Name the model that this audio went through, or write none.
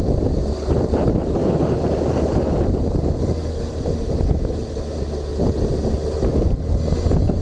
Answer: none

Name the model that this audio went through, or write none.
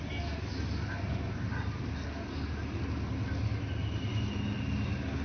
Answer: none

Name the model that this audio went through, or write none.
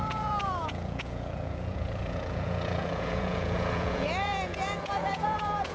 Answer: vocoder, Vocos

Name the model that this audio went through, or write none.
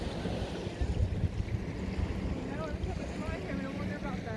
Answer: none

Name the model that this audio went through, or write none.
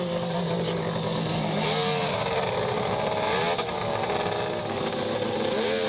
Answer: none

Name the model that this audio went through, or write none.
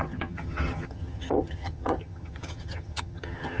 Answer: vocoder, HiFi-GAN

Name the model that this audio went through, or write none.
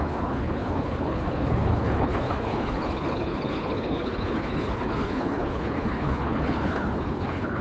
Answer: codec, HILCodec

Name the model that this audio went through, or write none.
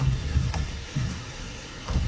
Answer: codec, SNAC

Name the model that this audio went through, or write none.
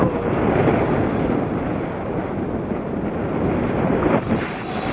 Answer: none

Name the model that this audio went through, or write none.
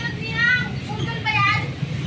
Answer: none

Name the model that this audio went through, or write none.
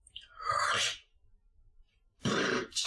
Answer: vocoder, BigVGAN v2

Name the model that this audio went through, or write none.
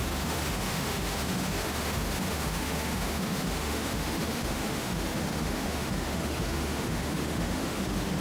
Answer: autoencoder, DAC-VAE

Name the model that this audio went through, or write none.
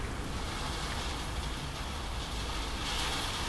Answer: none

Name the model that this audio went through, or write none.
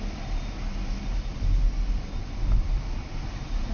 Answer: none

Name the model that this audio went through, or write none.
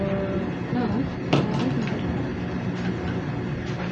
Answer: none